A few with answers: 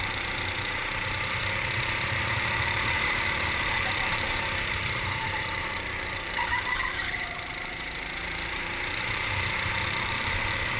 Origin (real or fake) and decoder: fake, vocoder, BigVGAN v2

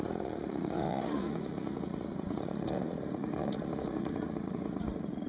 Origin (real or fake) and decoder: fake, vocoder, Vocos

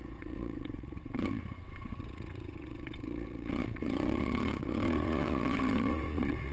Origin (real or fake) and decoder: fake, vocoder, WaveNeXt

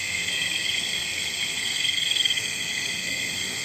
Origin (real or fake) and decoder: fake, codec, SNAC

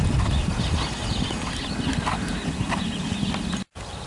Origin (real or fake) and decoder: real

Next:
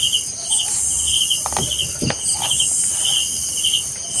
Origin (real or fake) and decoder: real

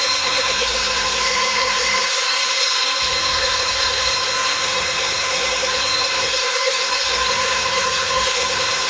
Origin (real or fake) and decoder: fake, codec, SNAC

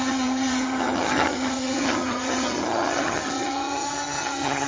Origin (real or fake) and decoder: fake, vocoder, HiFi-GAN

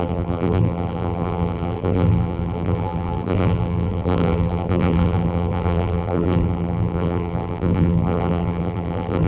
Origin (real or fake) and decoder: fake, vocoder, BigVGAN v2